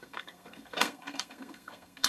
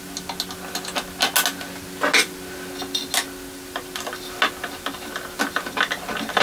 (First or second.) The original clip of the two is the second